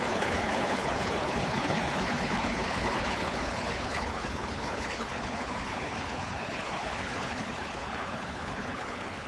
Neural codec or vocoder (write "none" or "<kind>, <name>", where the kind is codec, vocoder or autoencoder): codec, HILCodec